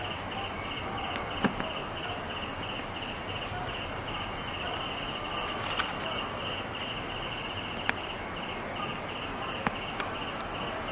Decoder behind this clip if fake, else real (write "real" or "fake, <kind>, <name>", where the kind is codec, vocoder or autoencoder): real